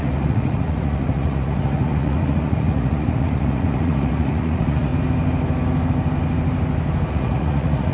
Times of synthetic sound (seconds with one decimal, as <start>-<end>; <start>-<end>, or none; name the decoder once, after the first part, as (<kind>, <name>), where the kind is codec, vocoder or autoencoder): 0.0-4.9 (vocoder, Vocos); 7.1-7.9